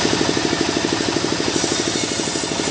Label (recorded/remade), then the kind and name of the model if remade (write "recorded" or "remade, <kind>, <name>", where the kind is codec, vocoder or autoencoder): recorded